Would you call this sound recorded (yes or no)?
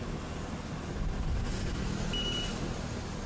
yes